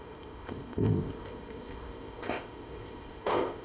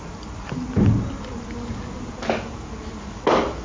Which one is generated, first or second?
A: first